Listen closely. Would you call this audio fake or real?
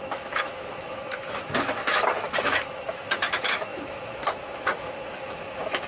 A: fake